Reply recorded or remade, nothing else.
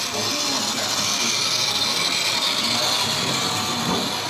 recorded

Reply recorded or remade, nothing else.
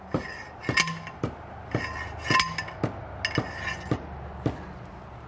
recorded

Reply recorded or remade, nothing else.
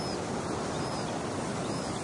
recorded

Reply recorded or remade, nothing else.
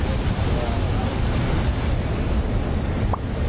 recorded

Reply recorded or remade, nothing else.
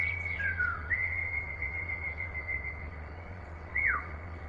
remade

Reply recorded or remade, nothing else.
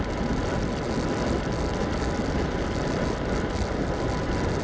recorded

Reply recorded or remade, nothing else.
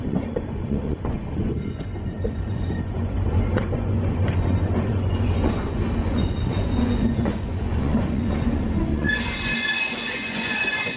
remade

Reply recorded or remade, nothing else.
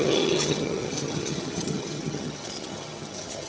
remade